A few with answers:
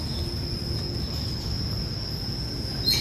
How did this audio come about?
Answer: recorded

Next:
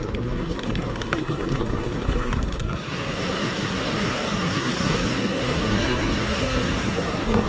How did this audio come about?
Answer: remade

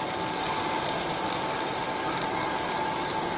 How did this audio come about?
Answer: recorded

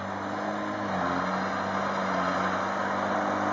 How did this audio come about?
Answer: recorded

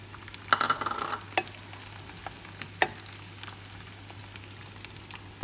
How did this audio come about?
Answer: recorded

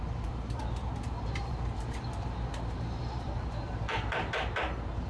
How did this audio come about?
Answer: remade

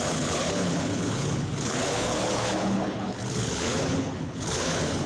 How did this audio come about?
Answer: remade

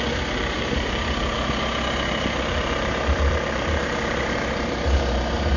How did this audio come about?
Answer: remade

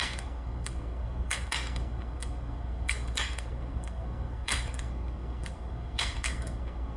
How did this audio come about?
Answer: remade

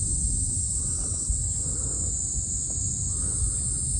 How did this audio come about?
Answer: recorded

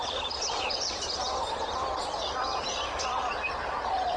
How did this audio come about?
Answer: recorded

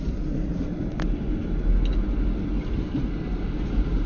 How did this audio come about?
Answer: recorded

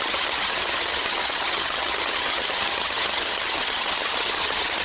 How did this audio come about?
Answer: remade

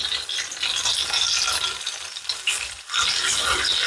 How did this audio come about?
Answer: recorded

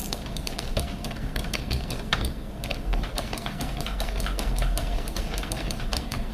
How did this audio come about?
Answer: remade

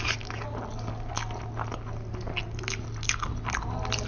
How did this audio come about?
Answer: recorded